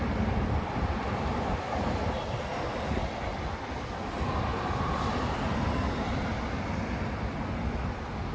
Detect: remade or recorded recorded